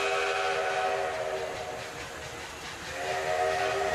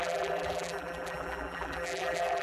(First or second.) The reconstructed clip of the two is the second